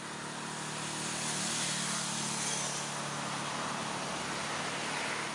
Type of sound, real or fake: real